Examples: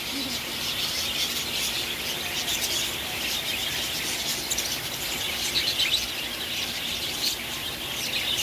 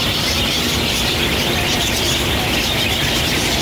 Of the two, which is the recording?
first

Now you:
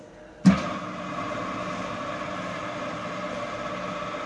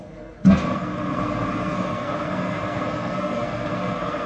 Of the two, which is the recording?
first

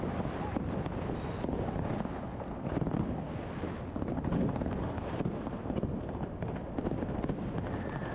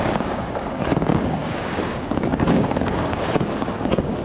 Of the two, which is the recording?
first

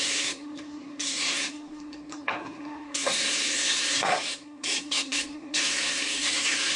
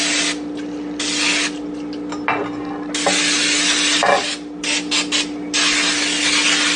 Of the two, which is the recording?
second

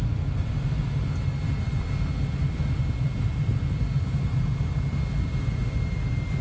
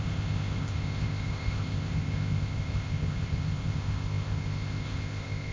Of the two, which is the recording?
first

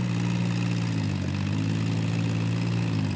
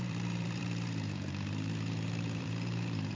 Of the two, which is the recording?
first